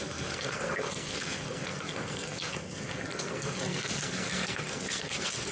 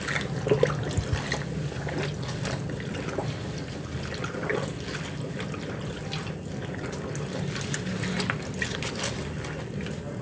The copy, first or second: first